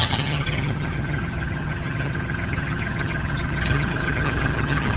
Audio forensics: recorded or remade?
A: remade